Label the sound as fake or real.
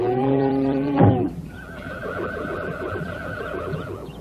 fake